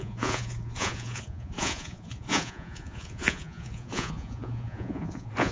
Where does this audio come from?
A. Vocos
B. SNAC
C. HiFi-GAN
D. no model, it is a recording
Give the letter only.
A